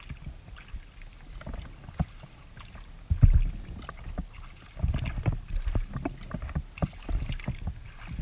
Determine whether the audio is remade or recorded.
recorded